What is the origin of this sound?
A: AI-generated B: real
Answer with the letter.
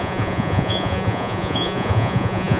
A